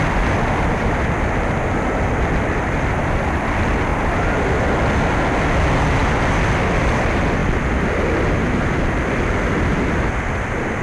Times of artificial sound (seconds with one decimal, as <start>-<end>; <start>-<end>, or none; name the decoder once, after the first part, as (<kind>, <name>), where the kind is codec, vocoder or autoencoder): none